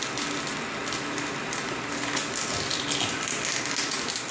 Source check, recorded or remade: recorded